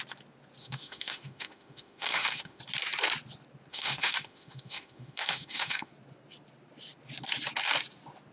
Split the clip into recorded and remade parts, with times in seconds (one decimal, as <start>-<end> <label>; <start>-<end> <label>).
0.0-0.6 recorded; 0.6-2.6 remade; 2.6-3.7 recorded; 3.7-5.9 remade; 5.9-8.3 recorded